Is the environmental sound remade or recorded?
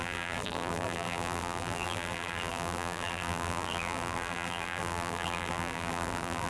remade